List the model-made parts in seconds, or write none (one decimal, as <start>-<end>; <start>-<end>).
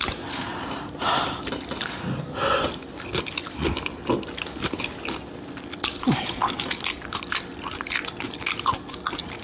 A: none